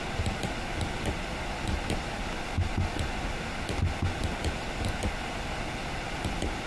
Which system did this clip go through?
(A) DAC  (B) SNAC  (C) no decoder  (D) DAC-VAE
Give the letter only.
C